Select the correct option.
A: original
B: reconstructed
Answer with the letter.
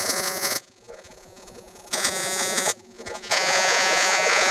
B